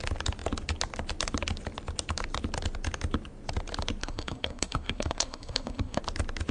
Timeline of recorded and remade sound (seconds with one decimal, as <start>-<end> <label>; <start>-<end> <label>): 0.0-4.0 recorded; 4.0-6.0 remade; 6.0-6.5 recorded